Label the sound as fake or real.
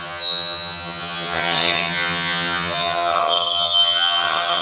fake